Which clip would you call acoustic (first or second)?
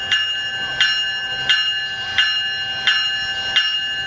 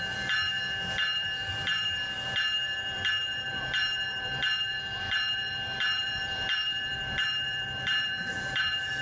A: first